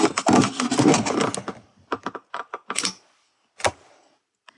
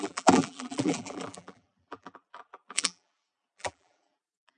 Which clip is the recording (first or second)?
first